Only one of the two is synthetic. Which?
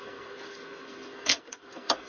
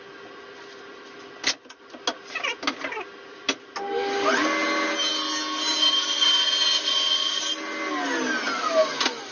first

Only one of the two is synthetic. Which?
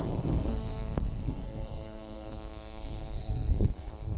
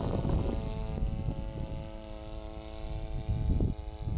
first